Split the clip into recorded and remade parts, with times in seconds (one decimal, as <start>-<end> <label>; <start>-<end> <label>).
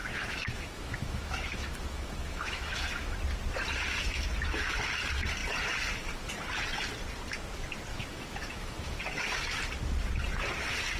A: 0.0-3.1 remade; 3.1-4.0 recorded; 4.0-4.8 remade; 4.8-7.9 recorded; 7.9-9.0 remade; 9.0-11.0 recorded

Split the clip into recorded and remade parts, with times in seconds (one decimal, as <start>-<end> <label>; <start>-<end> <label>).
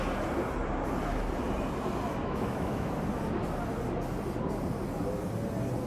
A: 0.0-2.2 recorded; 2.2-2.9 remade; 2.9-5.9 recorded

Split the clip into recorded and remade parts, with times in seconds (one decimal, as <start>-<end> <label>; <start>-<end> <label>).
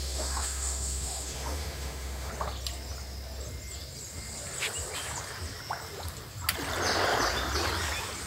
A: 0.0-2.3 remade; 2.3-8.3 recorded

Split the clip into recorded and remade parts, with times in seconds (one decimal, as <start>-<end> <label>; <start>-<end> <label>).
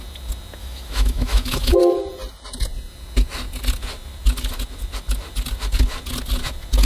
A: 0.0-0.6 recorded; 0.6-1.8 remade; 1.8-6.8 recorded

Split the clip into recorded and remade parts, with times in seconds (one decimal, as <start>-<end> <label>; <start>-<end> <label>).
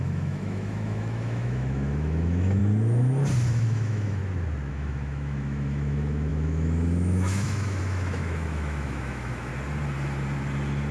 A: 0.0-2.6 remade; 2.6-3.5 recorded; 3.5-4.2 remade; 4.2-4.7 recorded; 4.7-9.5 remade; 9.5-10.9 recorded